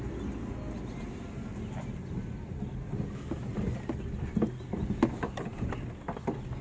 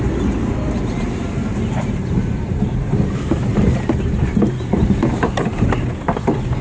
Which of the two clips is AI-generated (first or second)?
second